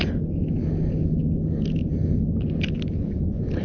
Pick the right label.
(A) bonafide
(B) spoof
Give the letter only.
A